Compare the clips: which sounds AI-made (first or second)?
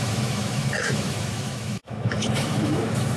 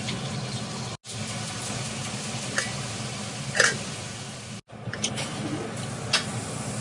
first